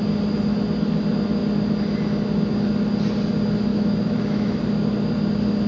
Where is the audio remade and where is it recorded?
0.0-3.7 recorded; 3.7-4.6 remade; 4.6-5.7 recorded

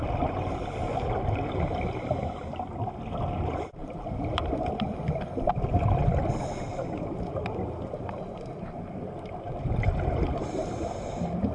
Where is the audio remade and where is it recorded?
0.0-11.5 recorded

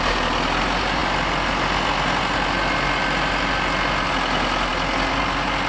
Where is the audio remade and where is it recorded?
0.0-5.7 recorded